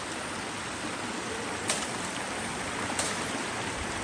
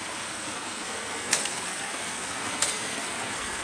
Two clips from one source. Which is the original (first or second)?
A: first